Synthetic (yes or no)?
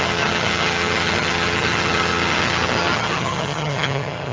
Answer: yes